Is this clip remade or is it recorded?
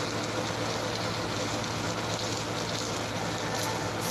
recorded